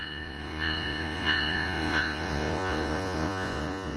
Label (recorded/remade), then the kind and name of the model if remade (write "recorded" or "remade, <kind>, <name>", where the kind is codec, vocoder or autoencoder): remade, vocoder, Vocos